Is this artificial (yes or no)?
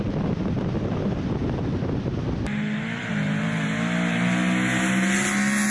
no